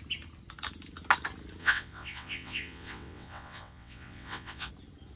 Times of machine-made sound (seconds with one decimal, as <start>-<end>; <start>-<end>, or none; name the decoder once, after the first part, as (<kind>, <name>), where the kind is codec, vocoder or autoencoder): 1.6-4.7 (vocoder, WaveNeXt)